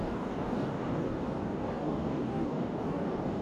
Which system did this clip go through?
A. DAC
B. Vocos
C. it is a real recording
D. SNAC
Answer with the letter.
A